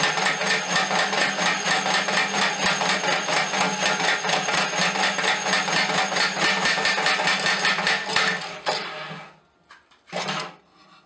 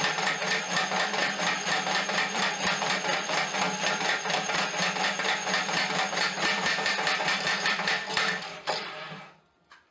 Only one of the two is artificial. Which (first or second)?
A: second